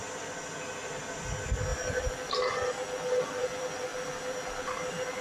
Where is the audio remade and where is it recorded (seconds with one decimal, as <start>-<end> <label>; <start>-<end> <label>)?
0.0-5.2 recorded

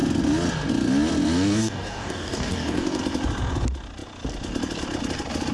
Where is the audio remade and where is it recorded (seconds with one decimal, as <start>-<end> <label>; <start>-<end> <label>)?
0.0-1.6 recorded; 1.6-3.0 remade; 3.0-5.5 recorded

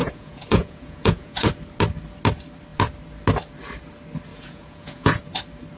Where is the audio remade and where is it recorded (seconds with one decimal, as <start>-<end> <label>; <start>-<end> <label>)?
0.0-1.5 remade; 1.5-4.3 recorded; 4.3-5.2 remade; 5.2-5.8 recorded

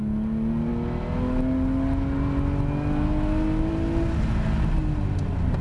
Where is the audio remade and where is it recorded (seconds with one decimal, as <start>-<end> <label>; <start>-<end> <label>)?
0.0-5.6 recorded

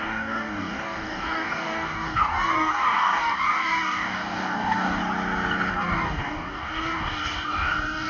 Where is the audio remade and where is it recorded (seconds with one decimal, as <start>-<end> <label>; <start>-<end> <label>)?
0.0-5.0 remade; 5.0-5.7 recorded; 5.7-8.1 remade

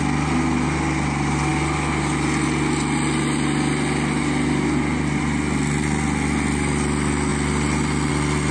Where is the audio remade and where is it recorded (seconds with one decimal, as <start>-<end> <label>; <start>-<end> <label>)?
0.0-8.5 recorded